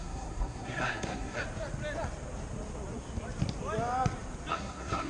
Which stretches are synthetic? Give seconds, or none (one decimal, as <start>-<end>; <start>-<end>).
0.0-1.4; 4.5-5.1